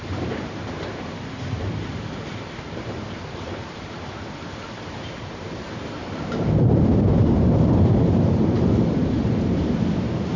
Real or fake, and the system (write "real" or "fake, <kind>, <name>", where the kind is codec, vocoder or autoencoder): fake, vocoder, BigVGAN v2